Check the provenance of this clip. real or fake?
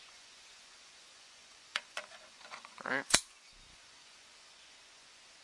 fake